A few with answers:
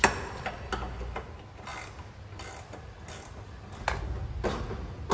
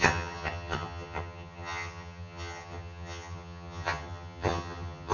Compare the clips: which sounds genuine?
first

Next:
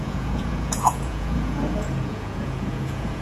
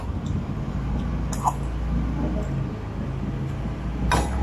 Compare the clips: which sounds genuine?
second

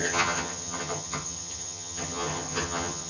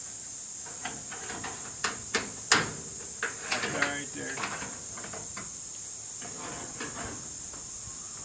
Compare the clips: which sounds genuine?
second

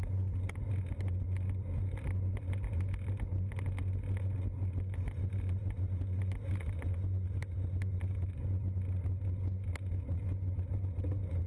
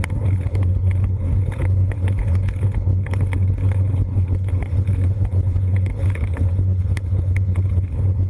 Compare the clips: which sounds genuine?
first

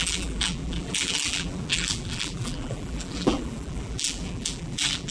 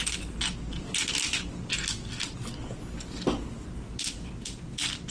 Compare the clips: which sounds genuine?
second